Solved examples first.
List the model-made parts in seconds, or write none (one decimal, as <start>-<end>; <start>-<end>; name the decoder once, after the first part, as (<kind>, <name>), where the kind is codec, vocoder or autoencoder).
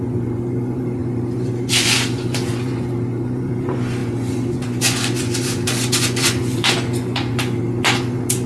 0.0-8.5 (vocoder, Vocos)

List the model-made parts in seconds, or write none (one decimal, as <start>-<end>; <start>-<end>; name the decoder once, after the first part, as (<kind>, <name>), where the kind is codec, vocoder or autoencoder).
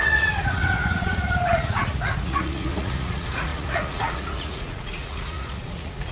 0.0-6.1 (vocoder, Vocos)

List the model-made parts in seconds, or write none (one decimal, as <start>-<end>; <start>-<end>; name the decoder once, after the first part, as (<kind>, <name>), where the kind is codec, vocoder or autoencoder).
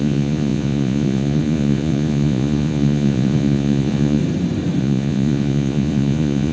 0.0-4.2 (vocoder, Vocos); 4.8-6.5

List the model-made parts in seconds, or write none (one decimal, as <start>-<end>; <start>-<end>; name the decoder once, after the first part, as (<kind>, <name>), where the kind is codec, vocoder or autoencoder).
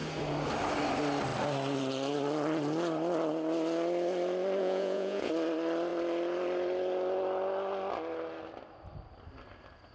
4.6-5.3 (vocoder, Vocos)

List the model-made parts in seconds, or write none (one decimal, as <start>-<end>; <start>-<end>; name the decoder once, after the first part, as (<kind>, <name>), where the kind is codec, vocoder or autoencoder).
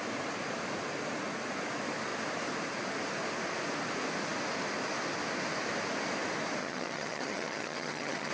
6.6-8.3 (vocoder, HiFi-GAN)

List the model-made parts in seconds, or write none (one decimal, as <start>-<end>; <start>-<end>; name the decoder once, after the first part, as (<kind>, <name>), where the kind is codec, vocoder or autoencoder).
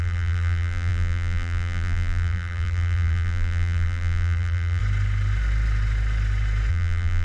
0.0-4.8 (vocoder, BigVGAN v2); 6.7-7.2